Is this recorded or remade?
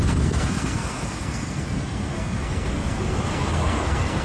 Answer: remade